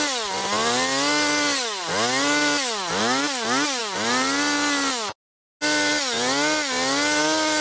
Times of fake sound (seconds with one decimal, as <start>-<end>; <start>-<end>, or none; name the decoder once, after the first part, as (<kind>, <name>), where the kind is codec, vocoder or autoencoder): none